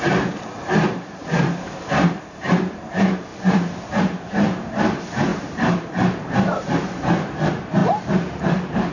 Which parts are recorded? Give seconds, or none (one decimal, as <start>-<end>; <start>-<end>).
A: 7.8-8.9